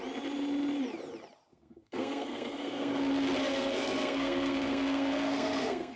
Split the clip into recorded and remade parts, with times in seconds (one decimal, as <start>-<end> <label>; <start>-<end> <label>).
0.0-1.5 recorded; 1.5-3.1 remade; 3.1-3.5 recorded; 3.5-6.0 remade